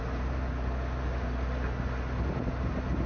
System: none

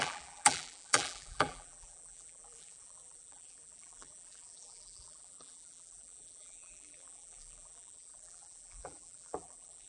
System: vocoder, BigVGAN v2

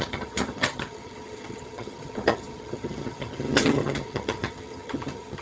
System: vocoder, HiFi-GAN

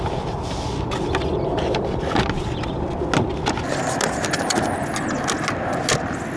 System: none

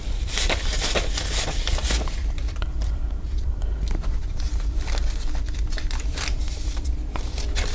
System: vocoder, BigVGAN v2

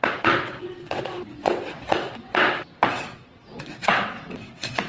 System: vocoder, WaveNeXt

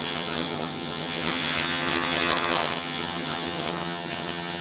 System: vocoder, HiFi-GAN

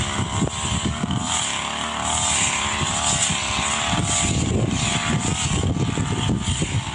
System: none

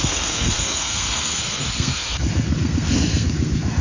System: codec, SNAC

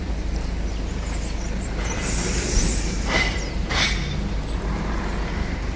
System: none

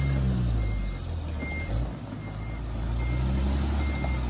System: none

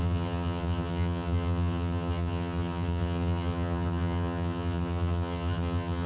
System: vocoder, HiFi-GAN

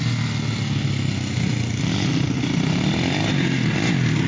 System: none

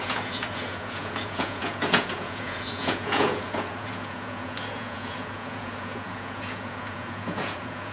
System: vocoder, Vocos